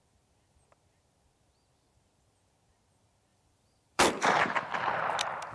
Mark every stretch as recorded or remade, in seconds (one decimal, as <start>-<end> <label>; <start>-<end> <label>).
0.0-3.3 recorded; 3.3-4.2 remade; 4.2-5.5 recorded